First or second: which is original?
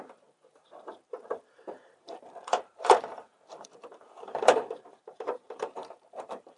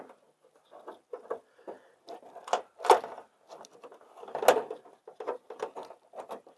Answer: second